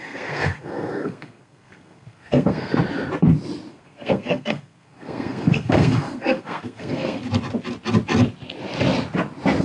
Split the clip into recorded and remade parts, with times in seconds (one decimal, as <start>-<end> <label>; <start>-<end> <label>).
0.0-2.7 remade; 2.7-3.7 recorded; 3.7-7.2 remade; 7.2-9.6 recorded